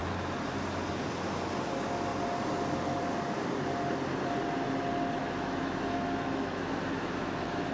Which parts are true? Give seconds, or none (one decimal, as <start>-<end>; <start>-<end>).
0.0-5.2

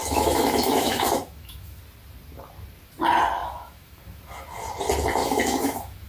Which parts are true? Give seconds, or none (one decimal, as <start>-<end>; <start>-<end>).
1.8-3.4; 4.2-5.2

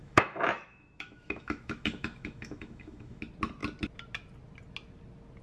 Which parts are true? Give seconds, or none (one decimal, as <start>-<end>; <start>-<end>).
3.2-5.4

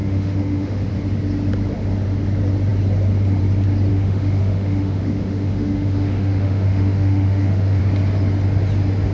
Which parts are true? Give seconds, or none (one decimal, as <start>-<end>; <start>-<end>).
0.9-3.9; 7.8-9.1

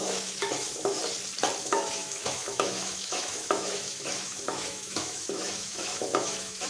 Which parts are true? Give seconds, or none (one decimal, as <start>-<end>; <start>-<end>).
1.0-1.6

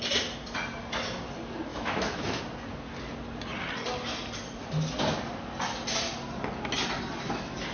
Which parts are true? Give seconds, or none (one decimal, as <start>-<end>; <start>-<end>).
0.0-1.7; 2.4-7.7

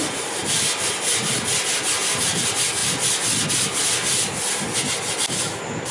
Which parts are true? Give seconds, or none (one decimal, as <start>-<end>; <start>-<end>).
0.0-5.9